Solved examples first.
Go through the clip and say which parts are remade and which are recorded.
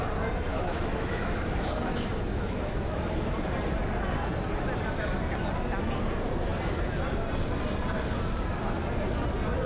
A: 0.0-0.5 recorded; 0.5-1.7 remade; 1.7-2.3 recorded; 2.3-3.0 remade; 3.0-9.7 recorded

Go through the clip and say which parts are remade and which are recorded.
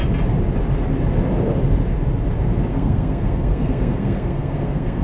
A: 0.0-2.7 recorded; 2.7-5.0 remade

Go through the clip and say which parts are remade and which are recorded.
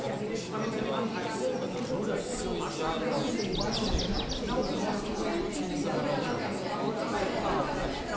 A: 0.0-8.2 recorded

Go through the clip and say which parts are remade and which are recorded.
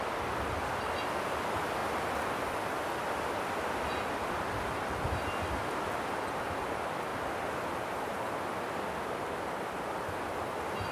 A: 0.0-10.9 recorded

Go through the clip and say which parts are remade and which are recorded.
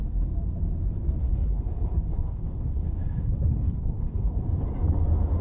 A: 0.0-1.2 recorded; 1.2-4.4 remade; 4.4-5.4 recorded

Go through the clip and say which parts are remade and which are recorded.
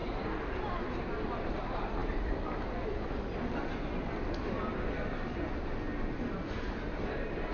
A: 0.0-7.5 recorded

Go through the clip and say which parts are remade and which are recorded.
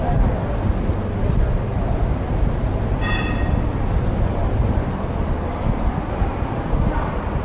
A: 0.0-4.4 recorded; 4.4-5.2 remade; 5.2-7.4 recorded